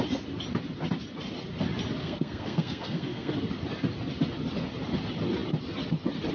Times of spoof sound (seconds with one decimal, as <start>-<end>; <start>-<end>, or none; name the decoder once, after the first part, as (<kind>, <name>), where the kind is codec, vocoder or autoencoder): 2.0-3.3 (codec, SNAC)